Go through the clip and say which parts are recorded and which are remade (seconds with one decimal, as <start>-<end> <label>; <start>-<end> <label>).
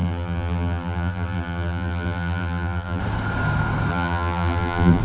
0.0-3.0 remade; 3.0-3.9 recorded; 3.9-5.0 remade